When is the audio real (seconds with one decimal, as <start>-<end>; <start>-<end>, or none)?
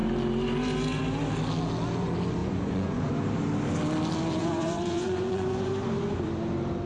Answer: 0.0-2.4; 3.1-4.4; 5.7-6.9